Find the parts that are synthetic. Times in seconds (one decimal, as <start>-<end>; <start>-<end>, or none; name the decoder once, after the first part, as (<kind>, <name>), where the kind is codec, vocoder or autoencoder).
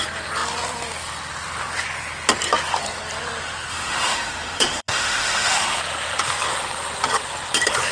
3.7-5.8 (autoencoder, DAC-VAE)